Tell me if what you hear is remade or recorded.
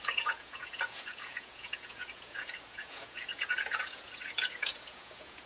remade